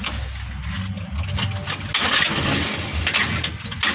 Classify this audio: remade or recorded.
recorded